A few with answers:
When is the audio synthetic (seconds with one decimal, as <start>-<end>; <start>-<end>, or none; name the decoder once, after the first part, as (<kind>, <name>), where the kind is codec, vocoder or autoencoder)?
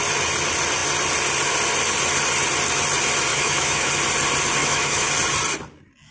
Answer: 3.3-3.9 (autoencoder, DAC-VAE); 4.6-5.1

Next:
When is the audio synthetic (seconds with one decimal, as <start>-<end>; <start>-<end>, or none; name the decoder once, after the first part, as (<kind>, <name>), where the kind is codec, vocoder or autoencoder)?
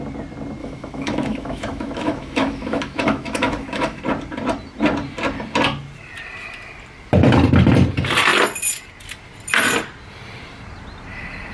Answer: 0.6-4.0 (autoencoder, DAC-VAE)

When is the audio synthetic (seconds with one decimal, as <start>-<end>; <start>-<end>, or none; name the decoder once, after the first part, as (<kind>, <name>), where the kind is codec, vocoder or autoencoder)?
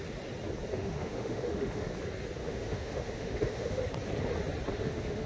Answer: 0.7-1.9 (autoencoder, DAC-VAE); 2.4-3.8; 4.7-5.3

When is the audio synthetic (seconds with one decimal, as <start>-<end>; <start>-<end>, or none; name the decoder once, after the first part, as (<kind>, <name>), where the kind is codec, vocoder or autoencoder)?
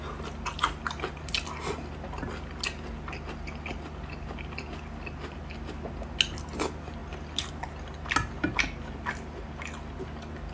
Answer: none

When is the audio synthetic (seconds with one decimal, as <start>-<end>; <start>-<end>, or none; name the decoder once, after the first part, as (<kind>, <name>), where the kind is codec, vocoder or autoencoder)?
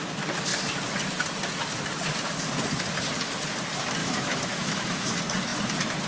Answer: 4.0-5.1 (autoencoder, DAC-VAE)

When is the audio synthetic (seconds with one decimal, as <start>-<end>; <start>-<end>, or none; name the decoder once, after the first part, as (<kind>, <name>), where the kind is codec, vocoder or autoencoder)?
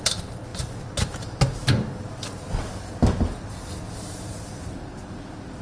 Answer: none